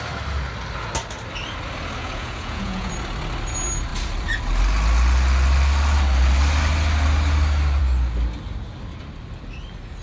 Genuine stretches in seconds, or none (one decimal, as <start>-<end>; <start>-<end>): 0.0-2.0; 2.9-10.0